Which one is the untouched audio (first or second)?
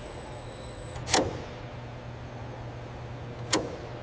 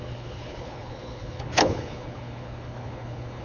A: first